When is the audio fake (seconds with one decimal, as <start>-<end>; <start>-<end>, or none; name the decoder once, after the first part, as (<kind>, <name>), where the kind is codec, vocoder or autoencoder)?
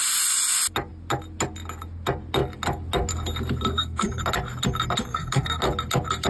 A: 3.7-4.2 (codec, SNAC); 5.1-5.6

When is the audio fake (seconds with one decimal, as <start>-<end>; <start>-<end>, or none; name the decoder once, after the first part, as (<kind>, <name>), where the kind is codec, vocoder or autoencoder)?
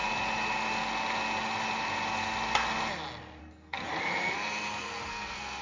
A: 3.4-3.8 (codec, SNAC); 5.1-5.6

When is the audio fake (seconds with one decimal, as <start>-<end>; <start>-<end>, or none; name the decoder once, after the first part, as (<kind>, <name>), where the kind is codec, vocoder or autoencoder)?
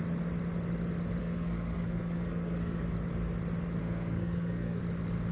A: 1.2-2.8 (codec, SNAC); 3.8-4.8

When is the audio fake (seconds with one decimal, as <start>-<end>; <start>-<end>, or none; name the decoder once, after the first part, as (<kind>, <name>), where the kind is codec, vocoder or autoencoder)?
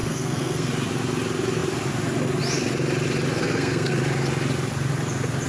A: 0.0-0.7 (codec, SNAC); 3.4-4.0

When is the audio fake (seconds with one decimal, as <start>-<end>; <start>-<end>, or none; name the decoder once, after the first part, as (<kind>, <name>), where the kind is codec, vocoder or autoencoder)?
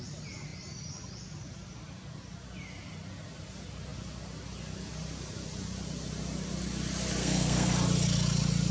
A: 7.2-7.7 (codec, SNAC)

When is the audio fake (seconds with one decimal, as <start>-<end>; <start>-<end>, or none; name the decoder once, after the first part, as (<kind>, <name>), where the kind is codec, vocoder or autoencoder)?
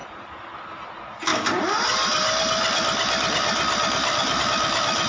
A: none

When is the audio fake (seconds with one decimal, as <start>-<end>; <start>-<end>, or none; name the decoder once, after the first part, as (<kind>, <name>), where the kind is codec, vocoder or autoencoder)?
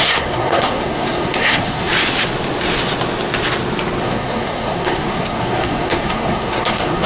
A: 0.0-1.9 (codec, SNAC); 4.0-7.1